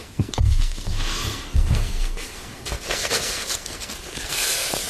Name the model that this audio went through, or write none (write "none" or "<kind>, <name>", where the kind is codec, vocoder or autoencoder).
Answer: codec, SNAC